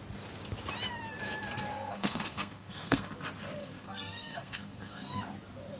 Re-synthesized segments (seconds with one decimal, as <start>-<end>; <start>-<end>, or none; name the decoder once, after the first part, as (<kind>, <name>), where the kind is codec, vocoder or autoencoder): 1.7-3.1 (codec, SNAC); 3.6-5.2